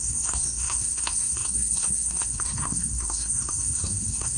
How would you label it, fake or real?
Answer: fake